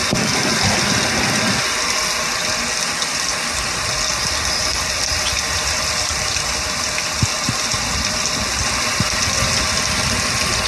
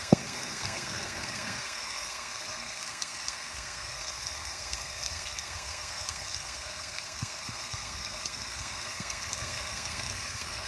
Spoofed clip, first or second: second